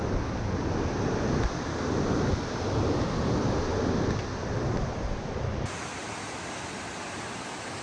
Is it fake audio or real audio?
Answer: real